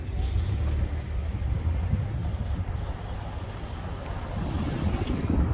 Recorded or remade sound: recorded